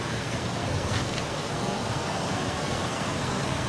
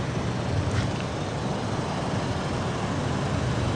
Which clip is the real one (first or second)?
second